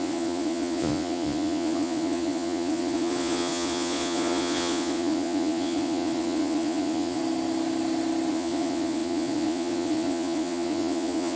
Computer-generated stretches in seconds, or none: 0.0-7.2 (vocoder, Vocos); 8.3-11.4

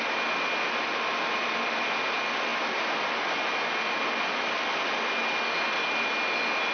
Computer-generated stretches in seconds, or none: none

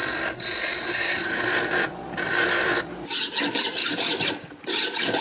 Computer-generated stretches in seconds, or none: 3.1-5.2 (vocoder, BigVGAN v2)

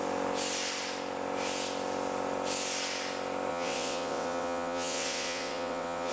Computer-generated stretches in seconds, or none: 3.5-6.1 (vocoder, WaveNeXt)

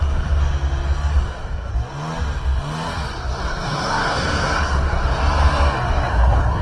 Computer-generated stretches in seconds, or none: 0.0-0.4 (codec, SNAC); 1.1-1.7; 3.4-5.2; 6.1-6.6

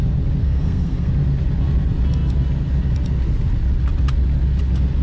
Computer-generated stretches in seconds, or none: 0.4-1.1 (codec, SNAC)

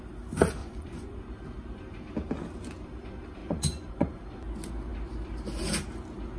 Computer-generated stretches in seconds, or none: 0.6-1.2 (vocoder, Vocos); 3.4-4.2

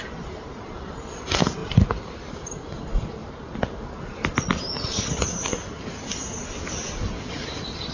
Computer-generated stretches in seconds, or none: none